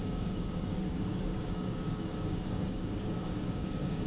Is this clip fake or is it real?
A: fake